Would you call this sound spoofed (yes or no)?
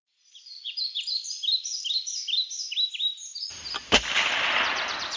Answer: yes